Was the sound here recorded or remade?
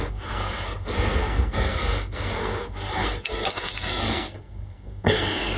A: remade